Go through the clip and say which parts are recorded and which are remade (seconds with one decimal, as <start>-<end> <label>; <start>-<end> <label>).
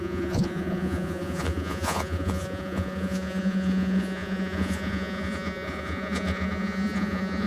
0.0-7.5 remade